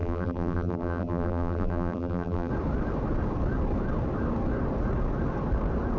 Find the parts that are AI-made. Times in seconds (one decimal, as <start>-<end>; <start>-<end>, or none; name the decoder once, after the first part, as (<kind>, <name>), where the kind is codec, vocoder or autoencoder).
0.0-2.5 (vocoder, BigVGAN v2)

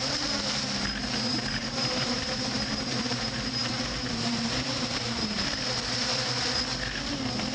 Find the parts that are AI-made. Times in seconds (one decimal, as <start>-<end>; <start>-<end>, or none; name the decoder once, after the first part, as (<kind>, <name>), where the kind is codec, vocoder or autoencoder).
1.3-5.8 (vocoder, BigVGAN v2)

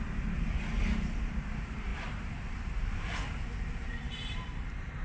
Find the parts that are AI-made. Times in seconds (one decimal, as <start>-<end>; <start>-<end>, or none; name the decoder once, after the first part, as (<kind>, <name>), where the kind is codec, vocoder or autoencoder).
1.9-5.0 (vocoder, BigVGAN v2)

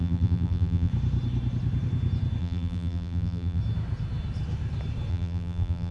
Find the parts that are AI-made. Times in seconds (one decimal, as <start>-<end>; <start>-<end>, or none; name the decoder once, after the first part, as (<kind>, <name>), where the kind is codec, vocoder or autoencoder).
0.0-0.9 (vocoder, BigVGAN v2); 2.4-3.6; 5.1-5.9

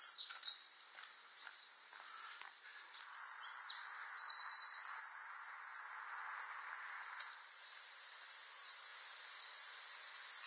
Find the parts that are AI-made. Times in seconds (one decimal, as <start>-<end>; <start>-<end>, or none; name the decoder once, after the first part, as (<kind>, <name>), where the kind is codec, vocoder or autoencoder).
0.0-4.8 (vocoder, BigVGAN v2); 7.3-8.9

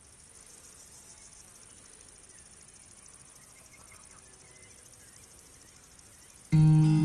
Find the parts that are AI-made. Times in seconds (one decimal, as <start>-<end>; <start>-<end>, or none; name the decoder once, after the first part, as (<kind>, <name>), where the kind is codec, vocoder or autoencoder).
none

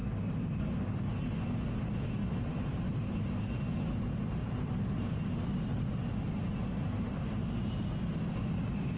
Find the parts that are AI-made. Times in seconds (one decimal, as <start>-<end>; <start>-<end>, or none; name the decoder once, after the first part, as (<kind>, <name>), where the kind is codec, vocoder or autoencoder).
2.2-2.9 (vocoder, BigVGAN v2); 4.4-8.3

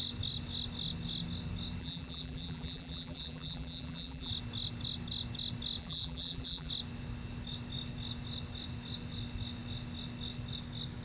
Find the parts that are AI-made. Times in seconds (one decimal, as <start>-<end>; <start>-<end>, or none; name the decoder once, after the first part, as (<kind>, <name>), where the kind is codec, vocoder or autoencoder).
1.8-4.3 (vocoder, BigVGAN v2); 5.8-6.7